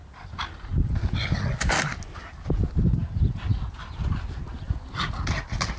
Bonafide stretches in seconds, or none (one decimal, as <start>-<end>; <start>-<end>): 0.0-5.8